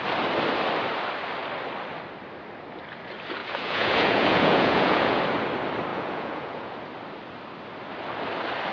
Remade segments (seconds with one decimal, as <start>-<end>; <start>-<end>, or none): 3.4-5.2; 5.9-6.7